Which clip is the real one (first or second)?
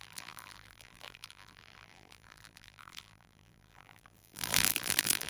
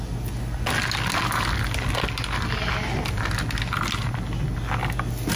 second